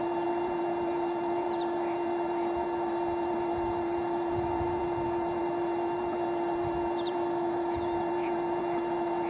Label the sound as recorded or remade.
remade